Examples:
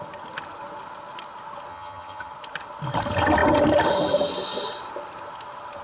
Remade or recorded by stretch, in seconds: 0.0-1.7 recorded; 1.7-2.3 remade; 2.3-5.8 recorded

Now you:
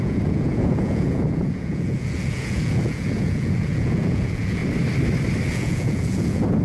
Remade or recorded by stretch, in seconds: 0.0-4.6 remade; 4.6-5.5 recorded; 5.5-6.6 remade

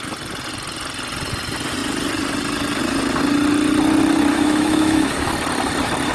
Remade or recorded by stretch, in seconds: 0.0-4.3 recorded; 4.3-5.3 remade; 5.3-6.1 recorded

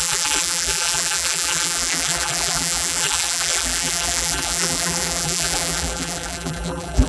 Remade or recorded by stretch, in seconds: 0.0-7.1 remade

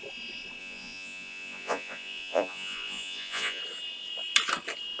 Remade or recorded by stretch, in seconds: 0.0-0.6 recorded; 0.6-3.6 remade; 3.6-5.0 recorded